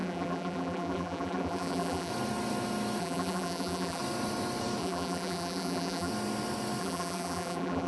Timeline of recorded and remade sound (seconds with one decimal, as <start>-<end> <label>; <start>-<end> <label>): 0.0-2.1 remade; 2.1-3.0 recorded; 3.0-4.0 remade; 4.0-4.8 recorded; 4.8-6.1 remade; 6.1-6.8 recorded; 6.8-7.9 remade